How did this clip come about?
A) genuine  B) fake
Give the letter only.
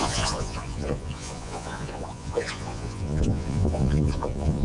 B